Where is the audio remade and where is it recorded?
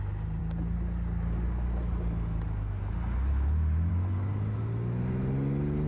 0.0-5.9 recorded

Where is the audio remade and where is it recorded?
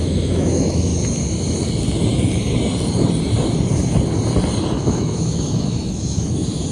0.0-0.9 remade; 0.9-4.8 recorded; 4.8-6.7 remade